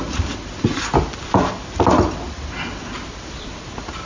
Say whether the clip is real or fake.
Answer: real